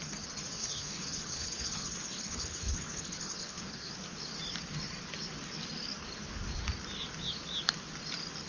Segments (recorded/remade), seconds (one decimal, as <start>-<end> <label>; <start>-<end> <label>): 0.0-0.6 recorded; 0.6-3.9 remade; 3.9-8.5 recorded